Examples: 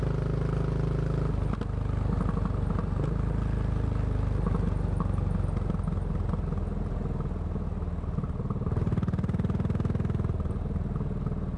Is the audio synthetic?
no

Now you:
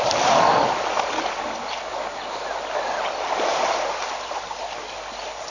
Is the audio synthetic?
no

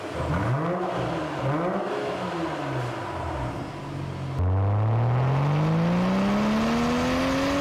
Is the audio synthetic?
no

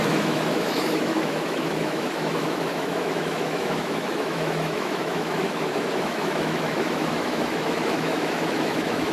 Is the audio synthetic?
yes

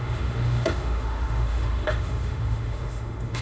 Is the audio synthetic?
yes